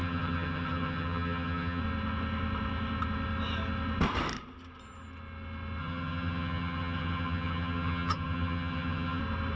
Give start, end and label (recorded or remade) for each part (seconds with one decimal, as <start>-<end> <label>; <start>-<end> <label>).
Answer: 0.0-1.8 remade; 1.8-5.8 recorded; 5.8-9.2 remade; 9.2-9.6 recorded